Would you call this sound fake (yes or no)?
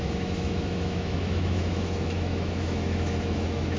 yes